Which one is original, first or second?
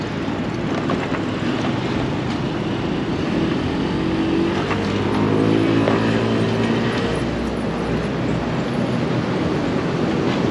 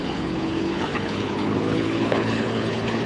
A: first